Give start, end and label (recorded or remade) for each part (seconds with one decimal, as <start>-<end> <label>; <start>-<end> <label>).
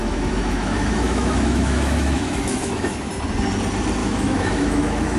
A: 0.0-3.1 remade; 3.1-4.0 recorded; 4.0-5.2 remade